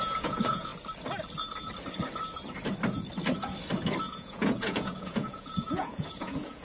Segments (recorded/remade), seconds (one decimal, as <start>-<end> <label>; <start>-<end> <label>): 0.0-0.7 remade; 0.7-4.0 recorded; 4.0-6.6 remade

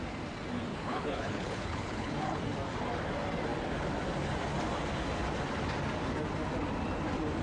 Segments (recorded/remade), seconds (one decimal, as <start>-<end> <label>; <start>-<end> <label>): 0.0-0.7 recorded; 0.7-2.4 remade; 2.4-7.4 recorded

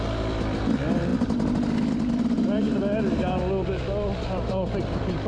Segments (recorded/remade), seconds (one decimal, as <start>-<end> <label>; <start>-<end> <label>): 0.0-5.3 recorded

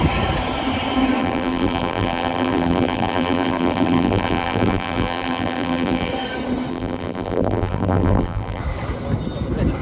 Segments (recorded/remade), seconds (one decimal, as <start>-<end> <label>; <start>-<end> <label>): 0.0-1.2 recorded; 1.2-6.1 remade; 6.1-6.7 recorded; 6.7-8.6 remade; 8.6-9.8 recorded

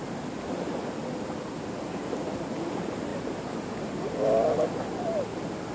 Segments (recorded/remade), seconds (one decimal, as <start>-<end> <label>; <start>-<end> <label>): 0.0-5.7 recorded

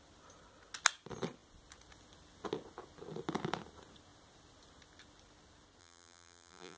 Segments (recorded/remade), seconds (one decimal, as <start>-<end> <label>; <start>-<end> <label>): 0.0-5.8 recorded; 5.8-6.8 remade